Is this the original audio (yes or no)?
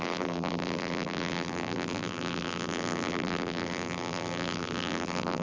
no